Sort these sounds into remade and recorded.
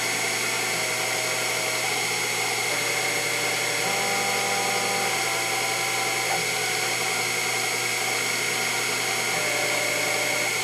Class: recorded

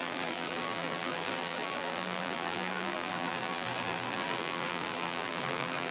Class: remade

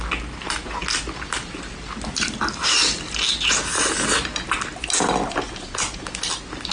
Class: recorded